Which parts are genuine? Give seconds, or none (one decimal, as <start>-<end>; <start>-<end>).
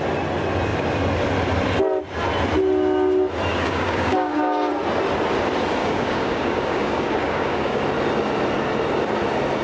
0.0-3.5; 4.7-5.8; 7.8-9.6